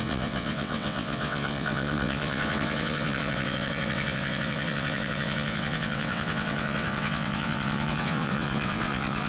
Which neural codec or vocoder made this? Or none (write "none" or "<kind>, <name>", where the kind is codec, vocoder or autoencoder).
vocoder, WaveNeXt